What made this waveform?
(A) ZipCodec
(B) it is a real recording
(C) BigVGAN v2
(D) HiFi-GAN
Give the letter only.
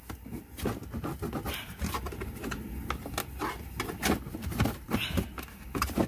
B